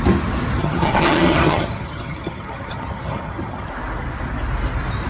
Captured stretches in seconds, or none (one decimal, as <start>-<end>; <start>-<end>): 0.0-0.6; 3.7-5.1